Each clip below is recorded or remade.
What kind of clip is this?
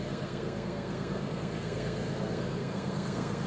remade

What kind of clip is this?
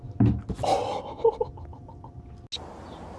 recorded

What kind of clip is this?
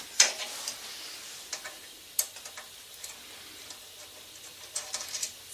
remade